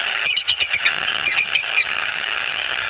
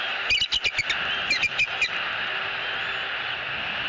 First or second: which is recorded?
second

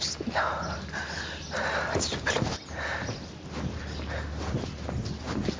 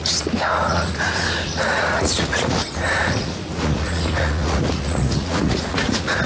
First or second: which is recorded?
first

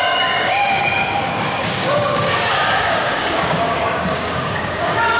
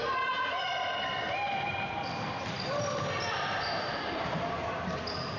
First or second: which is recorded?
second